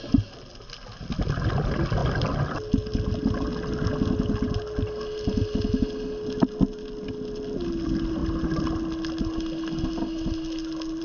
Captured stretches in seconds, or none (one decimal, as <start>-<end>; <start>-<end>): 0.0-11.0